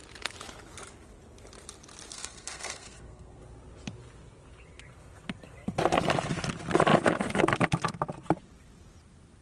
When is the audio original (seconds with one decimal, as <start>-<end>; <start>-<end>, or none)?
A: 0.0-2.1; 3.4-9.4